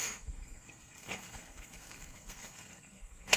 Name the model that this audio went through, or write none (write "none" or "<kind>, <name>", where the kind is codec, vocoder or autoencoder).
codec, SNAC